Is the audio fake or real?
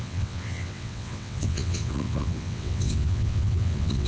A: fake